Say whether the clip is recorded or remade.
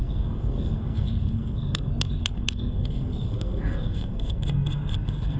remade